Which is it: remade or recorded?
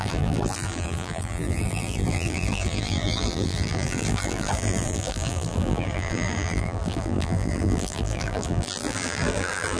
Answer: remade